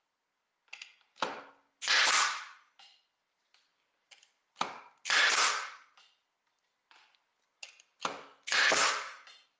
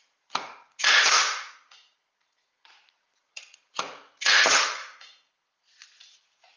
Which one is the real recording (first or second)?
first